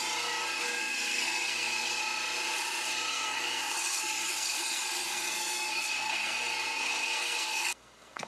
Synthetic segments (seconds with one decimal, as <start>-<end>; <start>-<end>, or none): 0.6-2.0; 3.1-8.3